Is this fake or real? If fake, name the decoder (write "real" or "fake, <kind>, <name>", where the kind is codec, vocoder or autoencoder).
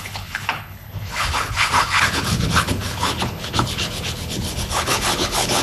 fake, codec, HILCodec